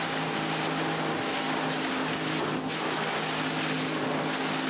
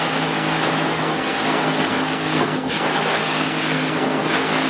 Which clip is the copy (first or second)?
second